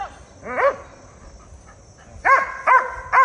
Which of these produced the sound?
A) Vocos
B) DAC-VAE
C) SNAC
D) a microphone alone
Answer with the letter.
D